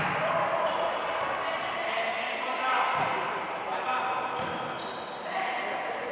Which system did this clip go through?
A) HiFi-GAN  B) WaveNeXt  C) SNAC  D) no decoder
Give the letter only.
D